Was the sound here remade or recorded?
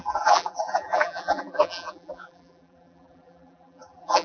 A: remade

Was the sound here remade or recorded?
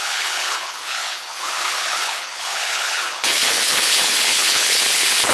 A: remade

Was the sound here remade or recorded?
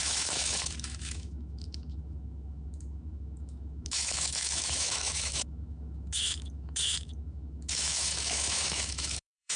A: remade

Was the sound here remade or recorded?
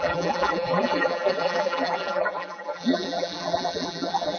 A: remade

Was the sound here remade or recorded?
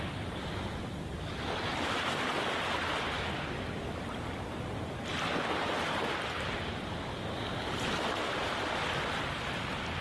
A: recorded